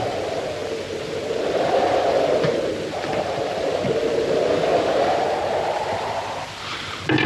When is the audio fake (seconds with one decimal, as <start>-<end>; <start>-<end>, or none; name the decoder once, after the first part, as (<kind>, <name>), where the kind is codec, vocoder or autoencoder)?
2.7-4.0 (vocoder, BigVGAN v2); 4.7-5.6